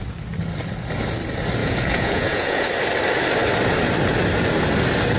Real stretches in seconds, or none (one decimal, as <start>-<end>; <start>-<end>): 0.0-1.6; 2.7-5.2